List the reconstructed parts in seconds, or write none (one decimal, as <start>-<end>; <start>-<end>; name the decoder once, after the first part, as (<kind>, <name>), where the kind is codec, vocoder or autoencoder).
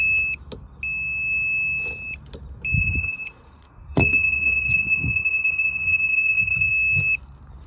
2.8-6.7 (vocoder, Vocos)